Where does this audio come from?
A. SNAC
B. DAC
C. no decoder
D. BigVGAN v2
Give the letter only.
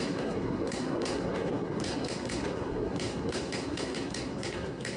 A